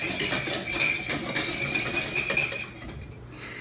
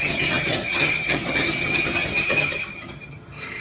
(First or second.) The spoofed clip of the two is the second